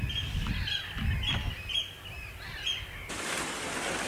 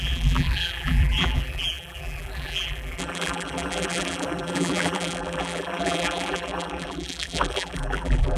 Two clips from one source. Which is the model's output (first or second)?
second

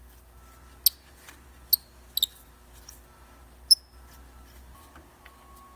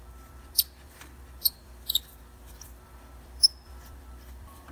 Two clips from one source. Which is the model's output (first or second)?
second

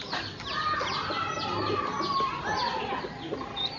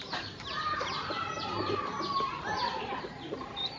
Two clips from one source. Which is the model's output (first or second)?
second